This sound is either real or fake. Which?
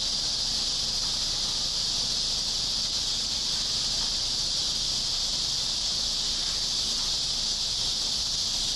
real